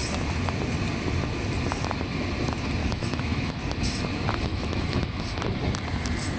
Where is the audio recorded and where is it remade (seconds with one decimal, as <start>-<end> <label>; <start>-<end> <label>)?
0.0-2.8 recorded; 2.8-3.5 remade; 3.5-4.5 recorded; 4.5-5.2 remade; 5.2-6.4 recorded